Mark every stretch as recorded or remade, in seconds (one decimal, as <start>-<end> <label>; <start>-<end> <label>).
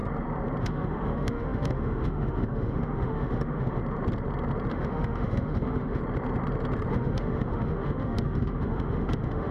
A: 0.0-0.6 recorded; 0.6-3.8 remade; 3.8-4.7 recorded; 4.7-6.0 remade; 6.0-6.9 recorded; 6.9-9.5 remade